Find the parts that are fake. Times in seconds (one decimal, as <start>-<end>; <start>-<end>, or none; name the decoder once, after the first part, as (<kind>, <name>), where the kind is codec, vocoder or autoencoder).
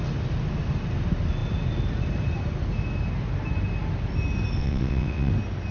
4.6-5.3 (vocoder, WaveNeXt)